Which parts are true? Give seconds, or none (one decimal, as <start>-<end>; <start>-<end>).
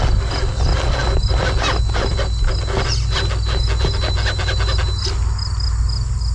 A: 0.0-6.3